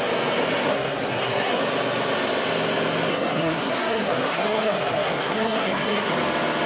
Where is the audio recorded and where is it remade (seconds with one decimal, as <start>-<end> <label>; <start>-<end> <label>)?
0.0-0.6 recorded; 0.6-1.6 remade; 1.6-3.1 recorded; 3.1-6.1 remade; 6.1-6.7 recorded

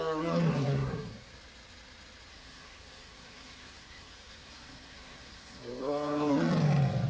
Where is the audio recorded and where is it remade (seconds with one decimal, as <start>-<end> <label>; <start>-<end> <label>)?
0.0-0.5 recorded; 0.5-1.3 remade; 1.3-2.3 recorded; 2.3-6.3 remade; 6.3-7.1 recorded

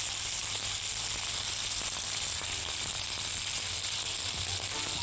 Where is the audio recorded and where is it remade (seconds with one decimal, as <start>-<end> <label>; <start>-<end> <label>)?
0.0-5.0 recorded

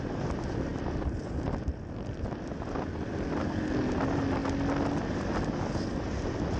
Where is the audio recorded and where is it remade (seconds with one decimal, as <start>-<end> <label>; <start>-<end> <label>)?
0.0-6.6 recorded

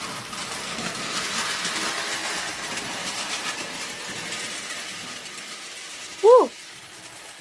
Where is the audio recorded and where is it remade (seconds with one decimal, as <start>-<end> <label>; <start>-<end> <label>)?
0.0-0.6 recorded; 0.6-1.2 remade; 1.2-7.4 recorded

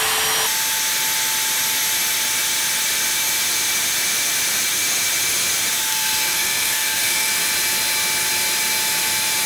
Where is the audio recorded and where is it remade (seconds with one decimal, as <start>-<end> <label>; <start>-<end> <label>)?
0.0-5.9 recorded; 5.9-7.3 remade; 7.3-9.5 recorded